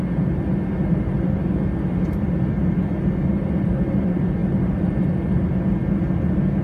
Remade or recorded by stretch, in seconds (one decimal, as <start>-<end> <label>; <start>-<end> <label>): 0.0-6.6 recorded